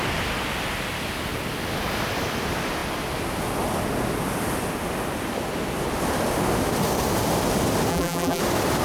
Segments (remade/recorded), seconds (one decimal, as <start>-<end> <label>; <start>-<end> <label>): 0.0-7.9 recorded; 7.9-8.4 remade; 8.4-8.8 recorded

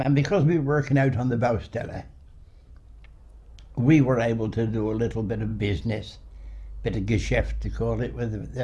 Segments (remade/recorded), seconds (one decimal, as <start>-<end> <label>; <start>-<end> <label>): 0.0-2.8 remade; 2.8-8.6 recorded

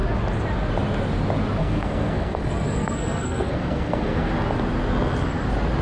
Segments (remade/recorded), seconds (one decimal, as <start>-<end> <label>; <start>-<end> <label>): 0.0-1.6 recorded; 1.6-4.3 remade; 4.3-5.8 recorded

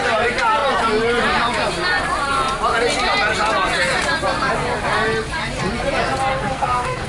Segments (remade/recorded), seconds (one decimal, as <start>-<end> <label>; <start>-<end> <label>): 0.0-6.3 recorded; 6.3-7.1 remade

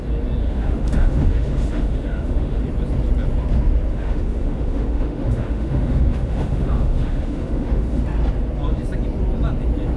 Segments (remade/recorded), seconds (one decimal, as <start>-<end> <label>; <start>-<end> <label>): 0.0-0.4 recorded; 0.4-2.6 remade; 2.6-3.9 recorded; 3.9-8.0 remade; 8.0-10.0 recorded

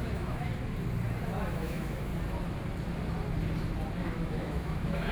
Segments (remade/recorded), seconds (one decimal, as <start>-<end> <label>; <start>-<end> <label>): 0.0-0.5 remade; 0.5-1.5 recorded; 1.5-2.1 remade; 2.1-4.0 recorded; 4.0-5.1 remade

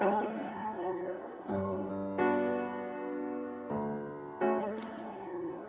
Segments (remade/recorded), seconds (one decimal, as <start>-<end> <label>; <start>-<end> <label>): 0.0-1.9 remade; 1.9-4.6 recorded; 4.6-5.7 remade

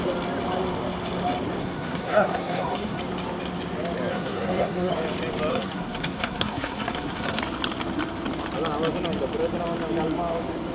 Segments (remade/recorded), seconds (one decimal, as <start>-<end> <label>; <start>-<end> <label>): 0.0-1.6 recorded; 1.6-3.0 remade; 3.0-4.1 recorded; 4.1-4.9 remade; 4.9-5.5 recorded; 5.5-7.4 remade; 7.4-10.7 recorded